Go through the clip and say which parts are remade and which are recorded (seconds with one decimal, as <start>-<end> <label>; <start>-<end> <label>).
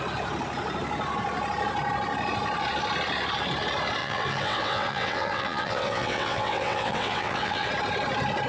0.0-4.0 recorded; 4.0-7.7 remade; 7.7-8.5 recorded